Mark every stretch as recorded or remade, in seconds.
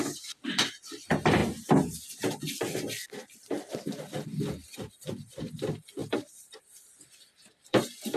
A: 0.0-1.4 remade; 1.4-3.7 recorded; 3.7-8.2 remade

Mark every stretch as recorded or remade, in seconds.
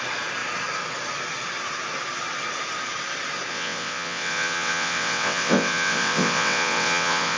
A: 0.0-3.5 recorded; 3.5-7.4 remade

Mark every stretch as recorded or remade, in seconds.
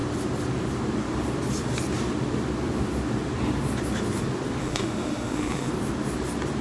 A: 0.0-4.6 recorded; 4.6-5.7 remade; 5.7-6.6 recorded